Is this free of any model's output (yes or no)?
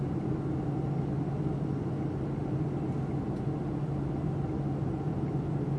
yes